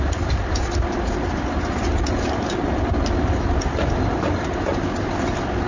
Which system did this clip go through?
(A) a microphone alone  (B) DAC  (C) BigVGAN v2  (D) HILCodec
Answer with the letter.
A